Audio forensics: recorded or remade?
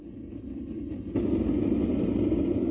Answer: recorded